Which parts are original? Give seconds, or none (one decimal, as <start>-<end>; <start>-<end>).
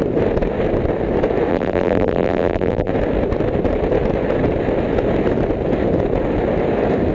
0.0-1.5; 2.9-7.1